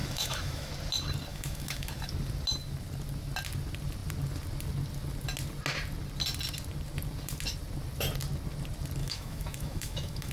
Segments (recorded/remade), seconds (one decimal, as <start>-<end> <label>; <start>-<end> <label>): 0.0-0.7 remade; 0.7-1.3 recorded; 1.3-2.1 remade; 2.1-9.0 recorded; 9.0-10.3 remade